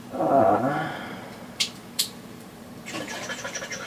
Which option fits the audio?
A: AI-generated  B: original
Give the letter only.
A